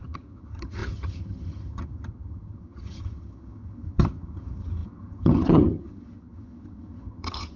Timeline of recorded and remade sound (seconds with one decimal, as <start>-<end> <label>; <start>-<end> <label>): 0.0-7.6 remade